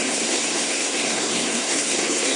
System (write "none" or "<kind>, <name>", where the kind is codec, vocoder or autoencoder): codec, SNAC